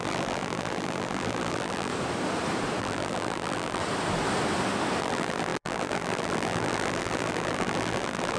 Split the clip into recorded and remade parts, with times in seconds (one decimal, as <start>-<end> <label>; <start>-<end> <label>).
0.0-1.9 remade; 1.9-2.8 recorded; 2.8-3.8 remade; 3.8-5.0 recorded; 5.0-8.4 remade